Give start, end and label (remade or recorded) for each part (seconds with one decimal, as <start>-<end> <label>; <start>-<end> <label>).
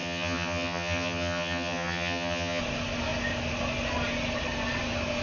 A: 0.0-2.6 remade; 2.6-5.2 recorded